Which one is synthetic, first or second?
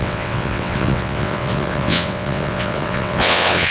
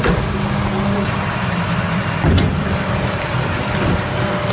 first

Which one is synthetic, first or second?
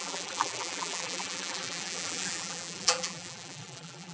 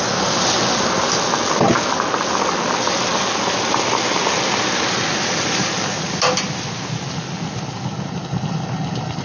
first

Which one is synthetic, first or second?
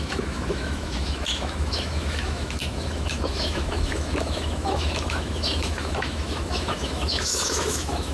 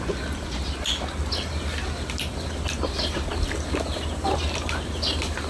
first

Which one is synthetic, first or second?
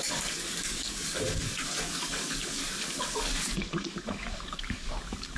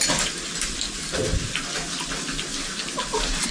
first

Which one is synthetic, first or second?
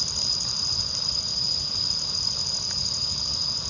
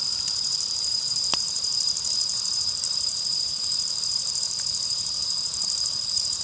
second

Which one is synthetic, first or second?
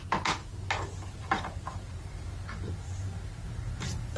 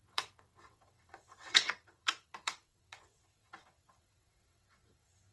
second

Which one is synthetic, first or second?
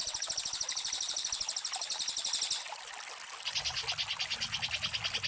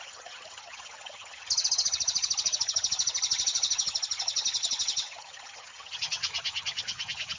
second